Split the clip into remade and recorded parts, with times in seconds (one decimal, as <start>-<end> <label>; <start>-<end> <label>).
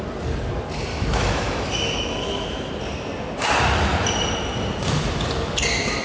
0.0-0.9 recorded; 0.9-2.7 remade; 2.7-6.0 recorded